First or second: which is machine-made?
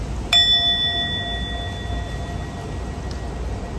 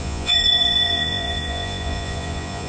second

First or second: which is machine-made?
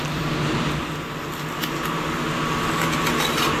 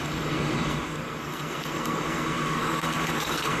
second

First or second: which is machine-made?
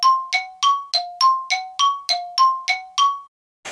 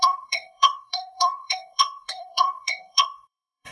second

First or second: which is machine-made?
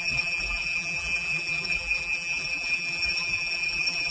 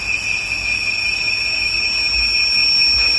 first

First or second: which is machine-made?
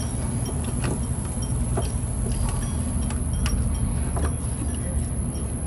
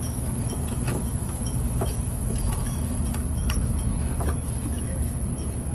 second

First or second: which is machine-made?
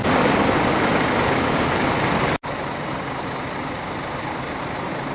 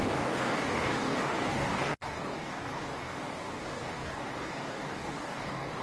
second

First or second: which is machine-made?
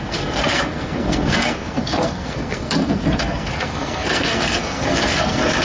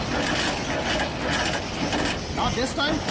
first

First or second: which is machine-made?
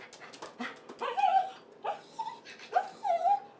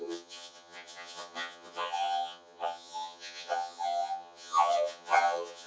second